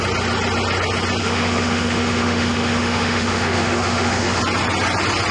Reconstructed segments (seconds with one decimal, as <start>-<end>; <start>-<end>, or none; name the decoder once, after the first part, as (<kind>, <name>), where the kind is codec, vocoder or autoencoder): 1.2-4.4 (autoencoder, DAC-VAE)